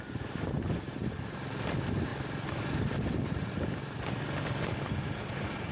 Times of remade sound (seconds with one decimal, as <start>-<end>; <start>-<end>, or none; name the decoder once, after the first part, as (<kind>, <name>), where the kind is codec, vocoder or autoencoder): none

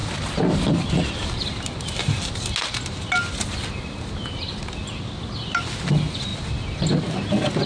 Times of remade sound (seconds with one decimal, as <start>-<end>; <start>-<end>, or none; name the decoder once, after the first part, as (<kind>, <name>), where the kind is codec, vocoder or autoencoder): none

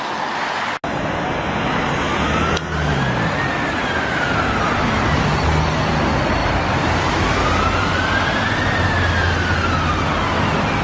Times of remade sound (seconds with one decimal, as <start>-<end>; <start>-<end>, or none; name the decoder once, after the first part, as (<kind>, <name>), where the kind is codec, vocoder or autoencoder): none

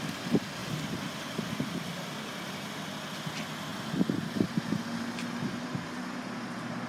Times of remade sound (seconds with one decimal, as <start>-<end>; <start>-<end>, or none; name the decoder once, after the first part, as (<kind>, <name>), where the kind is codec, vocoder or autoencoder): none

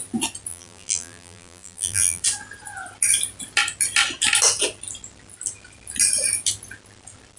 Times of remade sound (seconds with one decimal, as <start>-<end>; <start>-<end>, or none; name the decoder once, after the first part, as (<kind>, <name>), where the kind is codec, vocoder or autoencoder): 0.5-2.2 (vocoder, BigVGAN v2)

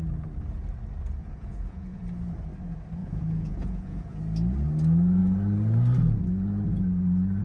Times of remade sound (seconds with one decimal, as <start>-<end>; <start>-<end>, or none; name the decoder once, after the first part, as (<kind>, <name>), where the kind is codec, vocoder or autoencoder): 1.2-2.0 (vocoder, Vocos); 3.0-4.2

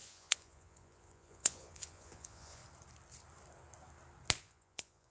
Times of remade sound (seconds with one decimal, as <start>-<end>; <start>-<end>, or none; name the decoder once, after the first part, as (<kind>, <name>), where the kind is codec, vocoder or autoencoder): 0.0-2.6 (vocoder, Vocos); 4.4-5.1

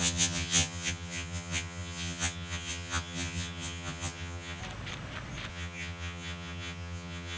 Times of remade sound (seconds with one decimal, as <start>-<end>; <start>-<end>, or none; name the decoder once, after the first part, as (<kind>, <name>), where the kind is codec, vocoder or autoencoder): 0.0-4.6 (vocoder, HiFi-GAN); 5.5-7.4